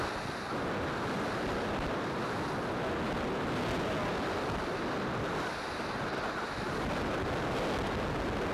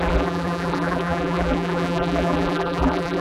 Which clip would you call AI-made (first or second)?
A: second